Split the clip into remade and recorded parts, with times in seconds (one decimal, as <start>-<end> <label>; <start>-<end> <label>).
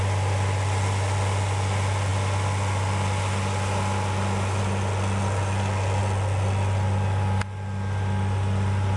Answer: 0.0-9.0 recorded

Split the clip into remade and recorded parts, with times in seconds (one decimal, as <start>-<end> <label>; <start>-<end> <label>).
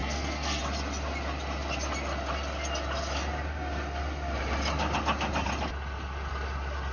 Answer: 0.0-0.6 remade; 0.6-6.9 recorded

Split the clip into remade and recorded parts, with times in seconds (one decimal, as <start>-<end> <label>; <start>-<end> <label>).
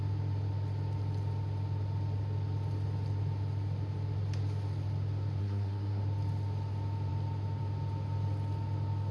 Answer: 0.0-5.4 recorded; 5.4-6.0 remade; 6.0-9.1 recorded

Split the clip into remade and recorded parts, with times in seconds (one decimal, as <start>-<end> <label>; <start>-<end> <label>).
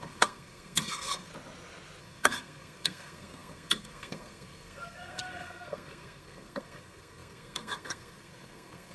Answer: 0.0-1.3 remade; 1.3-2.0 recorded; 2.0-8.9 remade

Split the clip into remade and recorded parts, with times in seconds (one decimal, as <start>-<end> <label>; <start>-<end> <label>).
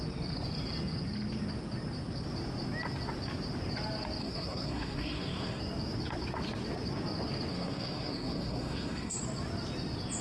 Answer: 0.0-4.2 recorded; 4.2-5.6 remade; 5.6-7.5 recorded; 7.5-9.2 remade; 9.2-10.2 recorded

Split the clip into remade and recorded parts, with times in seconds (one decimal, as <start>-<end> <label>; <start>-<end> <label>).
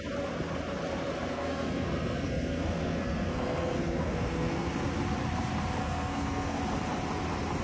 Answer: 0.0-1.3 recorded; 1.3-4.7 remade; 4.7-5.8 recorded; 5.8-6.6 remade; 6.6-7.6 recorded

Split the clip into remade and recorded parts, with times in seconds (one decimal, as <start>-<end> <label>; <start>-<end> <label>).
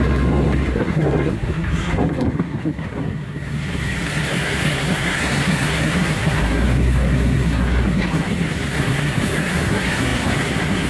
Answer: 0.0-10.9 remade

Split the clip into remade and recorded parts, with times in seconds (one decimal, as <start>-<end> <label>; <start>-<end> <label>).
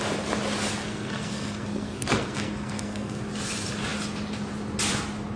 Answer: 0.0-0.8 recorded; 0.8-3.2 remade; 3.2-5.4 recorded